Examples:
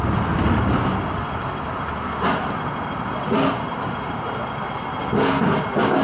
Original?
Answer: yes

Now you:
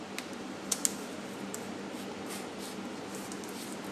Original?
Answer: yes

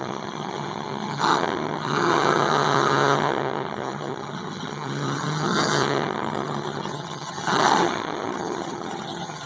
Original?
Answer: no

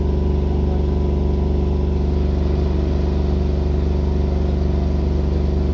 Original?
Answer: yes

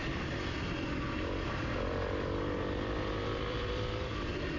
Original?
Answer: no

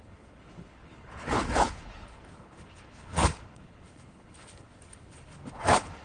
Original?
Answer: no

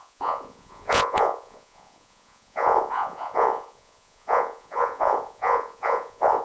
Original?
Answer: no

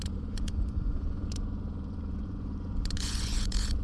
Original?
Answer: no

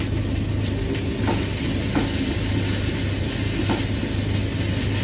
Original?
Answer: yes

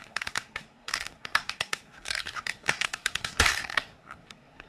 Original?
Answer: no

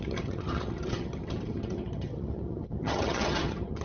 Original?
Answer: no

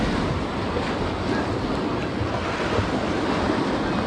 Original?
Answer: yes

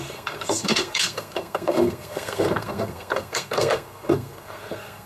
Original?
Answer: no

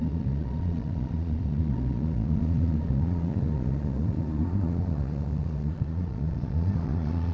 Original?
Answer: no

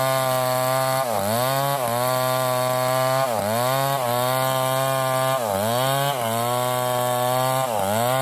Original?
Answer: yes